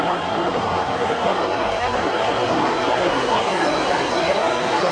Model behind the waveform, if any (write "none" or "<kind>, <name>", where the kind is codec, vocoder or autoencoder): codec, SNAC